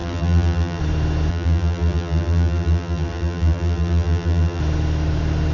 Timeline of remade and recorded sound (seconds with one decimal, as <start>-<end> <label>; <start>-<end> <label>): 0.0-0.8 remade; 0.8-1.3 recorded; 1.3-4.6 remade; 4.6-5.5 recorded